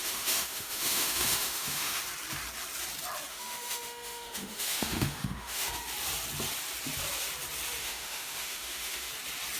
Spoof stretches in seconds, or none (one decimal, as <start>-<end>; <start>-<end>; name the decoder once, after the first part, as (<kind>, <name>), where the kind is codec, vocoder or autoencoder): 0.0-2.0 (autoencoder, DAC-VAE); 3.3-5.7; 7.8-9.1